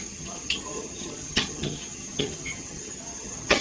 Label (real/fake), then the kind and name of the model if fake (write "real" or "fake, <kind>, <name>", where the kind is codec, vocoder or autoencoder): fake, vocoder, HiFi-GAN